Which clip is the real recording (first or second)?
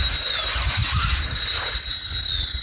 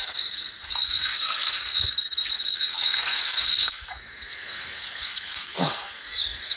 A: first